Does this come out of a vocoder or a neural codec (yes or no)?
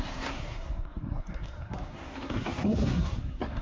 yes